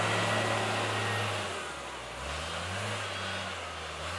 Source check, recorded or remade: recorded